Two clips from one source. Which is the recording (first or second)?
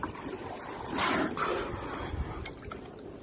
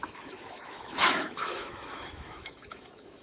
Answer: first